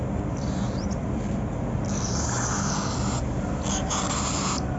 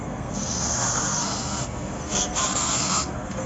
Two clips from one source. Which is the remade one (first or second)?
second